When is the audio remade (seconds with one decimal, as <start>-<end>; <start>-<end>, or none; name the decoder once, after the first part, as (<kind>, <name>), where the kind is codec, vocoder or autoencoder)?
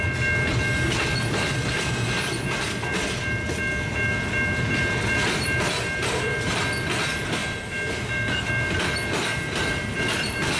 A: none